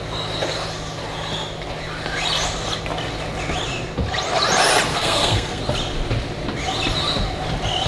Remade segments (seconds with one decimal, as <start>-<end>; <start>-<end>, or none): 4.9-5.6